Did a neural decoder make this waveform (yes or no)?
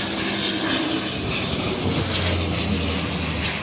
no